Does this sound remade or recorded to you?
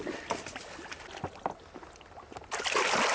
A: recorded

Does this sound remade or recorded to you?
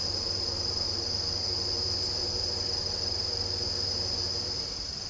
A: recorded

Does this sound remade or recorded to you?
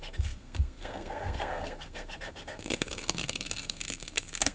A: remade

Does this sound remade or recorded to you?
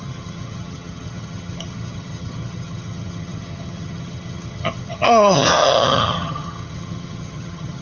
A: remade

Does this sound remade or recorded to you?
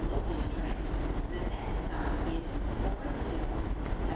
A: recorded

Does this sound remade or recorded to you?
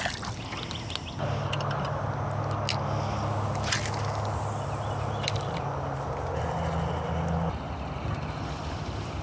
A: recorded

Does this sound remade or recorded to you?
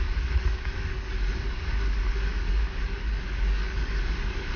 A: remade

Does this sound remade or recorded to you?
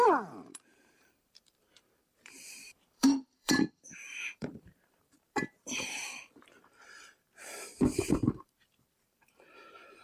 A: remade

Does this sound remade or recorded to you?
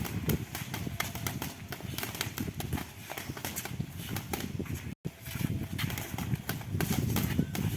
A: recorded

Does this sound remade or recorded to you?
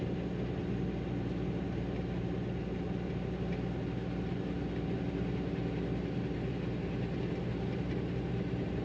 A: recorded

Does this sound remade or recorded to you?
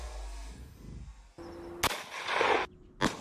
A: recorded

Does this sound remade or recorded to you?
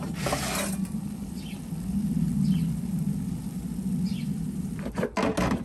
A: recorded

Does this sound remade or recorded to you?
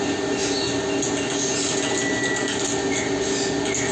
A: recorded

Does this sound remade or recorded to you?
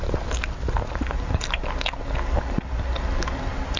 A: recorded